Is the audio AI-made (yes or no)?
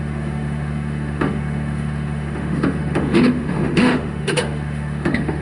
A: yes